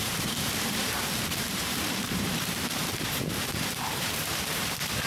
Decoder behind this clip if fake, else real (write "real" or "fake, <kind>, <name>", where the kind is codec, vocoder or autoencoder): fake, vocoder, BigVGAN v2